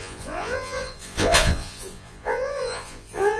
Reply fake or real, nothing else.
fake